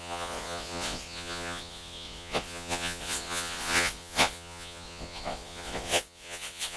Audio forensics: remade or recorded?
remade